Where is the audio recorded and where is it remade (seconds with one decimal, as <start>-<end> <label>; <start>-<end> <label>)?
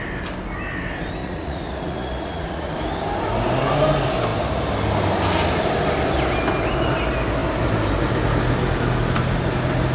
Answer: 0.0-1.2 recorded; 1.2-2.7 remade; 2.7-9.9 recorded